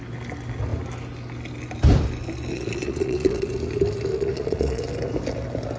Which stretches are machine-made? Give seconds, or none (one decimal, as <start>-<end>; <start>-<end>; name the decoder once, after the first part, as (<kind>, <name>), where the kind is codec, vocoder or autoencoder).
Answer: 2.5-3.5 (vocoder, Vocos); 4.1-4.8